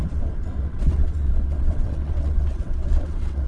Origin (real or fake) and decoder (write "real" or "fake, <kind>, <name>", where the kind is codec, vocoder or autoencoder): fake, vocoder, WaveNeXt